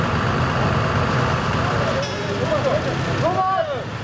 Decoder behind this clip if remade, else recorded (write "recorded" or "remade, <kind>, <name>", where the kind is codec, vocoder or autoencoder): recorded